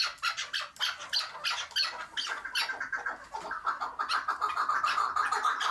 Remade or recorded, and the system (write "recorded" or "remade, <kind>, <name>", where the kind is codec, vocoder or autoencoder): recorded